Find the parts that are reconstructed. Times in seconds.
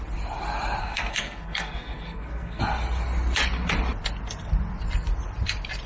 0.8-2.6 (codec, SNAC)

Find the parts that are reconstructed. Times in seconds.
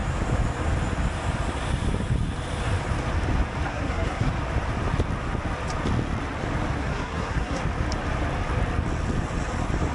3.7-4.3 (codec, SNAC); 6.8-7.6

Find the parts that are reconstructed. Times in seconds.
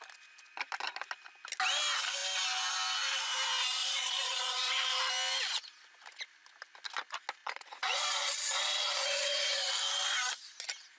3.8-4.7 (vocoder, Vocos); 7.4-9.7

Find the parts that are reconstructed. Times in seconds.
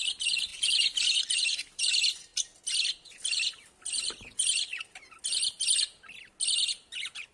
0.0-2.3 (vocoder, BigVGAN v2); 6.7-7.3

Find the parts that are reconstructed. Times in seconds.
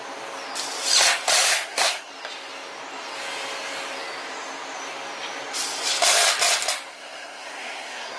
1.5-2.1 (codec, SNAC); 6.9-8.2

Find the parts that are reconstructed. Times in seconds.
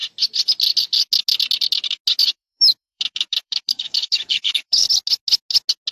2.2-4.9 (autoencoder, DAC-VAE)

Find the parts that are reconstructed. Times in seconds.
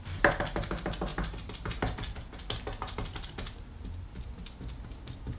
none